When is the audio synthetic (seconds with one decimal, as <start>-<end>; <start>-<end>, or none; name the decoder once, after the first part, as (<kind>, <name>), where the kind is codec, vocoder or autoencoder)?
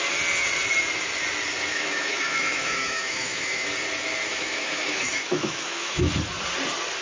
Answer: 1.7-3.7 (autoencoder, DAC-VAE); 4.3-6.1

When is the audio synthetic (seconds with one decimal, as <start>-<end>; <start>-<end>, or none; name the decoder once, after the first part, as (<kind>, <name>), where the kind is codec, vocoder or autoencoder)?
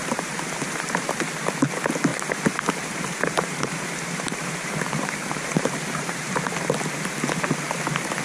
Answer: 0.0-1.2 (vocoder, BigVGAN v2); 2.1-6.4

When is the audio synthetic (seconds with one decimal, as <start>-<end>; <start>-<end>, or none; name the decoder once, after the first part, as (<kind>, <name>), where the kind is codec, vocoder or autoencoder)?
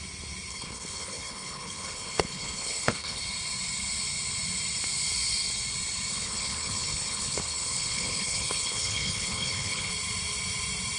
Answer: 0.5-3.2 (codec, HILCodec); 6.1-9.9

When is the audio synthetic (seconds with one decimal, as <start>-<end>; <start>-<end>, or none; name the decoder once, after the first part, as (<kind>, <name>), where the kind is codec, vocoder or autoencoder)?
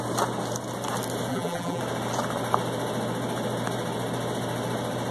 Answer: 1.3-1.8 (vocoder, BigVGAN v2)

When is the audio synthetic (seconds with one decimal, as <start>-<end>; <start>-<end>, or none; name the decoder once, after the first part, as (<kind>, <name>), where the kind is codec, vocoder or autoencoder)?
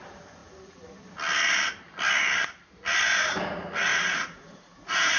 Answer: 3.9-5.2 (vocoder, Vocos)